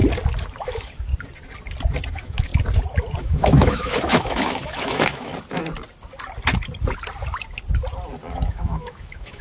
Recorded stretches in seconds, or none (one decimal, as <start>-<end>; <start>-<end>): 0.0-0.6; 1.1-2.1; 2.5-3.2; 5.3-8.3